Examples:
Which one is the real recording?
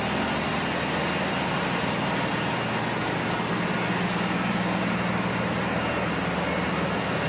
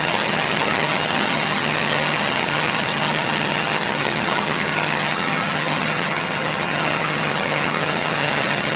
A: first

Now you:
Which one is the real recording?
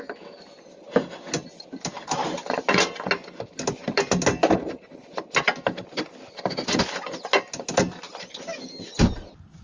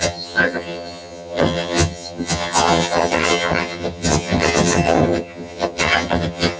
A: first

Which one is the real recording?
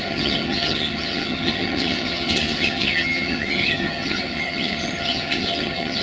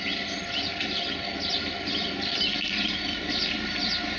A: second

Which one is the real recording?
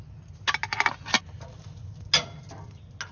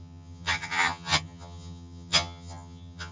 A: first